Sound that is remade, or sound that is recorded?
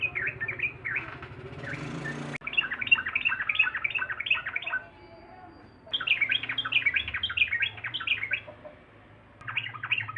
recorded